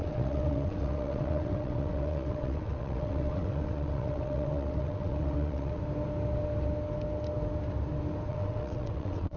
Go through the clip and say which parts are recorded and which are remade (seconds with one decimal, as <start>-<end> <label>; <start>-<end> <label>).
0.0-5.8 remade; 5.8-8.3 recorded; 8.3-9.4 remade